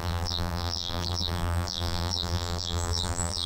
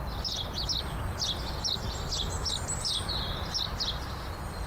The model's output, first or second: first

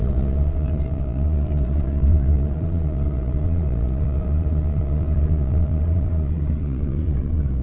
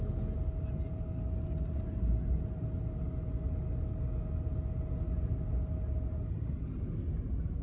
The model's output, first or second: first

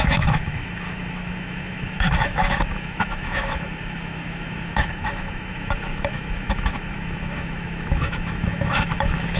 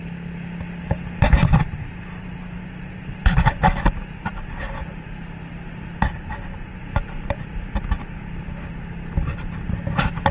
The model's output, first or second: first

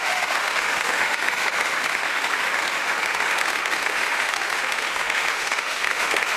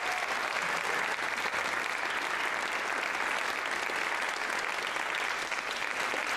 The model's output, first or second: first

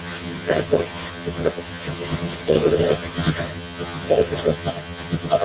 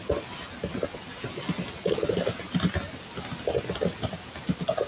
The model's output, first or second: first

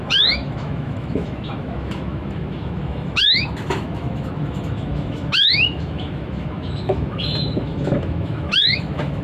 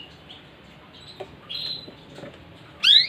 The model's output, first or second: first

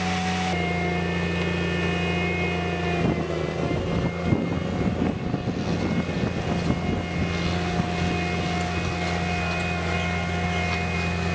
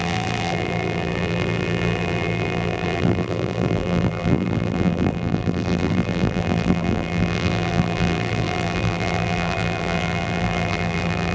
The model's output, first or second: second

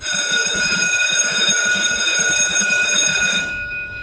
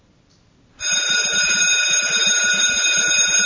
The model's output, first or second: first